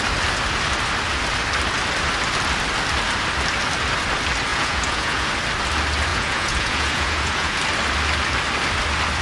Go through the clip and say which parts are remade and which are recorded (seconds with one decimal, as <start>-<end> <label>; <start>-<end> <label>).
0.0-4.5 recorded; 4.5-5.3 remade; 5.3-6.1 recorded; 6.1-7.6 remade; 7.6-9.2 recorded